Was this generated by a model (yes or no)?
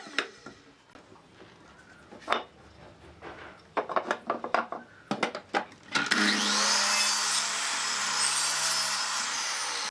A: no